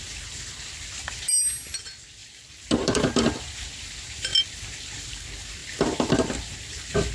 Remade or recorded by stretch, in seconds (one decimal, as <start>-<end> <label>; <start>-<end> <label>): 0.0-2.2 recorded; 2.2-3.4 remade; 3.4-4.3 recorded; 4.3-5.1 remade; 5.1-7.1 recorded